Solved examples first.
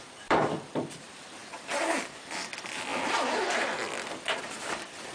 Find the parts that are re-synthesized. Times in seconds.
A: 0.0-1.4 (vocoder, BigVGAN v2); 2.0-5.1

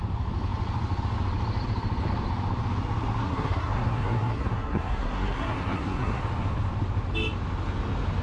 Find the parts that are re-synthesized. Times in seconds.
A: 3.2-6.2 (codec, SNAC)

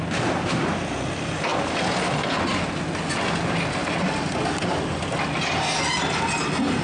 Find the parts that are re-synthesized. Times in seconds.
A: none

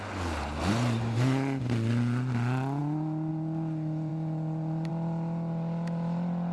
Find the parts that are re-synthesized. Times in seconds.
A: none